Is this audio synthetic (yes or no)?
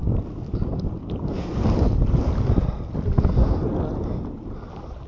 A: no